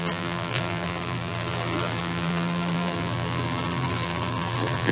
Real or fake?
fake